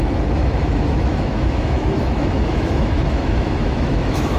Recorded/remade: remade